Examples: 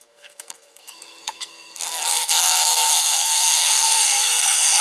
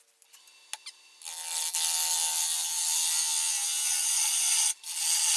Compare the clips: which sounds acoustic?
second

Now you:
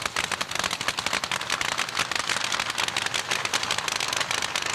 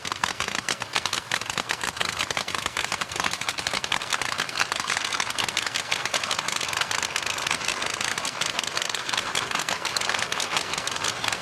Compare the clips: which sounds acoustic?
first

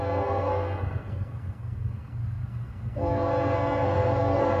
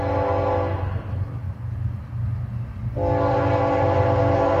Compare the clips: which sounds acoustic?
second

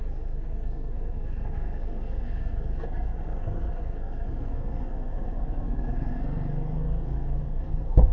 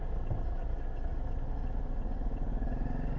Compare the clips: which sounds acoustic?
second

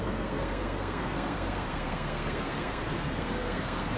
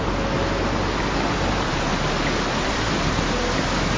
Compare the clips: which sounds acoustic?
second